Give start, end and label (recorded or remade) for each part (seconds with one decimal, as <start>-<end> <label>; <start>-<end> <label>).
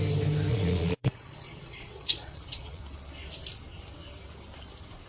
0.0-0.5 recorded; 0.5-2.8 remade; 2.8-5.1 recorded